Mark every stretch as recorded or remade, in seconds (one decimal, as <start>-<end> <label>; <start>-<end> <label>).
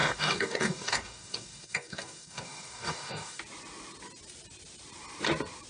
0.0-3.4 remade; 3.4-5.7 recorded